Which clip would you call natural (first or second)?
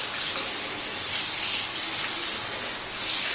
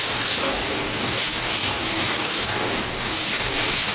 first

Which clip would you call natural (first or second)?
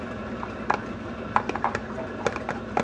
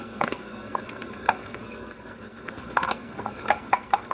first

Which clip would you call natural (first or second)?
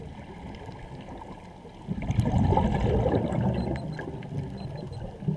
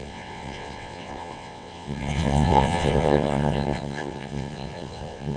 first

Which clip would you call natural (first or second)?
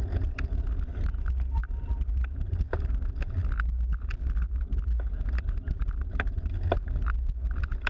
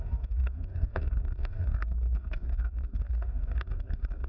first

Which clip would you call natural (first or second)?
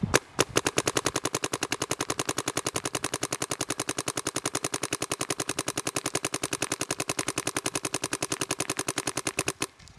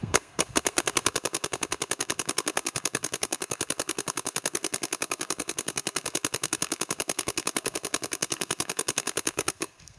first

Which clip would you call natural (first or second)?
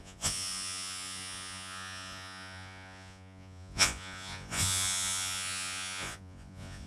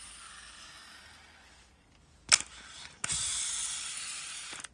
second